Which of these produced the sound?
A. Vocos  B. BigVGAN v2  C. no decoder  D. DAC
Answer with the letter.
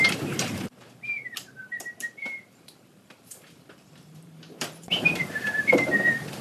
B